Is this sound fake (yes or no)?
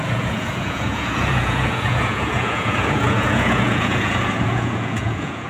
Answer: yes